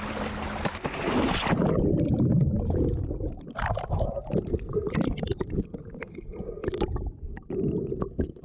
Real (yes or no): yes